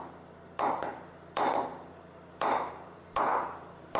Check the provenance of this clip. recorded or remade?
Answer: remade